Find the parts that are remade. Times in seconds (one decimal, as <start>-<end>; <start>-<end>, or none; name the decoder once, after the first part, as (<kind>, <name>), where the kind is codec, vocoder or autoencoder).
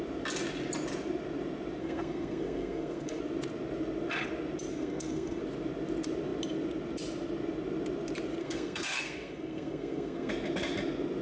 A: 1.8-3.2 (codec, SNAC); 4.7-5.4; 8.4-10.3